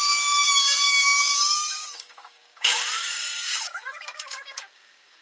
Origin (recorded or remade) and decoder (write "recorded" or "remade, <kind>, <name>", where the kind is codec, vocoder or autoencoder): remade, codec, DAC